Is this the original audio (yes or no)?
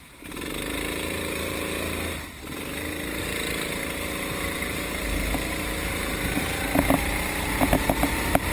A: no